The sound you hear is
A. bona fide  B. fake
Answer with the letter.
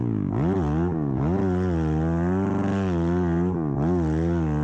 A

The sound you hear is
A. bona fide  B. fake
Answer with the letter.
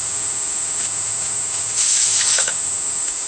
B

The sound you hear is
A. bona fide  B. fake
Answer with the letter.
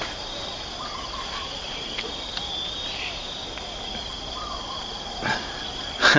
A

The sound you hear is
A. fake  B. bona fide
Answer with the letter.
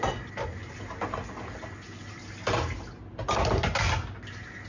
B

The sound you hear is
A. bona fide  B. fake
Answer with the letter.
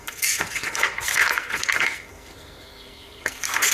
B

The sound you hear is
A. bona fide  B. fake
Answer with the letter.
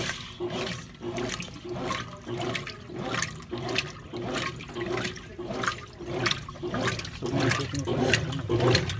A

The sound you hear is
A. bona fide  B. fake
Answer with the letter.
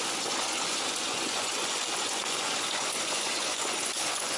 B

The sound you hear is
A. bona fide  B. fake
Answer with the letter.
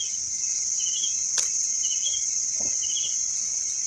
A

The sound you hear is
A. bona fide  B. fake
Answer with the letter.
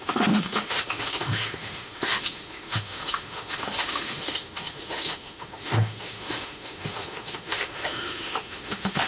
B